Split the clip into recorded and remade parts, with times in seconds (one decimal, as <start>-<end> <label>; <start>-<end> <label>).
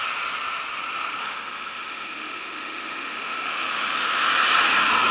0.0-1.2 recorded; 1.2-4.3 remade; 4.3-5.1 recorded